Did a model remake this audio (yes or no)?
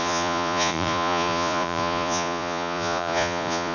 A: yes